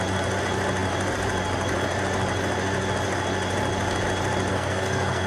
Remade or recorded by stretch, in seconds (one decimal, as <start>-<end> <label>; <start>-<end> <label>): 0.0-4.5 recorded; 4.5-5.3 remade